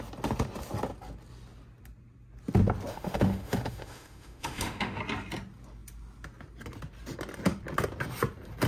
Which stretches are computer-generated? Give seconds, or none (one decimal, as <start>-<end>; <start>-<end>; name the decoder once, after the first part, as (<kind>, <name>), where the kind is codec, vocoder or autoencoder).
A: 2.9-5.0 (autoencoder, DAC-VAE)